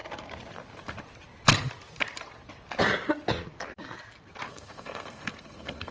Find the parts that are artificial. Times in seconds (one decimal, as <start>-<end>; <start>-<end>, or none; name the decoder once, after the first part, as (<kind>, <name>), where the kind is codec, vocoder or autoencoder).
4.5-5.9 (codec, SNAC)